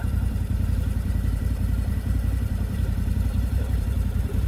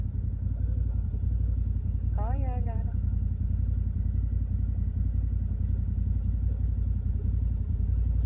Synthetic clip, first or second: first